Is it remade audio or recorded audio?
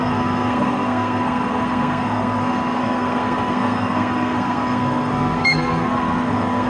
remade